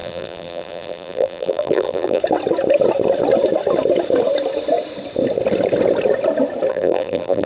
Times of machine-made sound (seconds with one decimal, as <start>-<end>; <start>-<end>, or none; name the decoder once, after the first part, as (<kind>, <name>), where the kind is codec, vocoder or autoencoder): 0.0-2.2 (vocoder, BigVGAN v2); 6.7-7.5